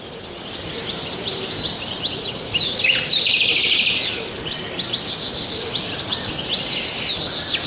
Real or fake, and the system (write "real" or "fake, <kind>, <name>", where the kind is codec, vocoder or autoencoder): real